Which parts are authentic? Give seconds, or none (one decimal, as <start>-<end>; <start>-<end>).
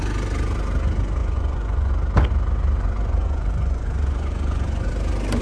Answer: 0.0-1.2; 1.9-2.8; 4.9-5.4